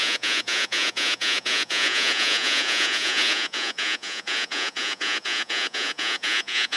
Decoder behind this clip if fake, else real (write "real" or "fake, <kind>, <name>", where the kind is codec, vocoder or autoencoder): fake, vocoder, Vocos